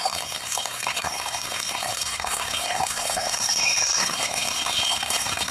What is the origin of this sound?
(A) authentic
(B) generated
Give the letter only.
B